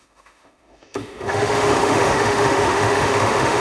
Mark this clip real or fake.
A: fake